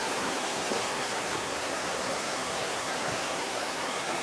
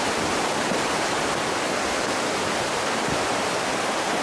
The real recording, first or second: second